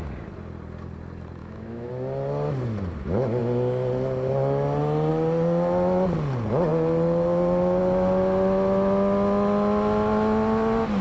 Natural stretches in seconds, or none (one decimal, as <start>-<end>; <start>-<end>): 0.0-1.4; 1.9-11.0